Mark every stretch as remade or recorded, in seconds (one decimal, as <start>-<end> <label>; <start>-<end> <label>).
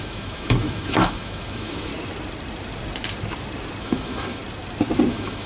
0.0-1.9 remade; 1.9-3.8 recorded; 3.8-4.4 remade; 4.4-5.1 recorded; 5.1-5.5 remade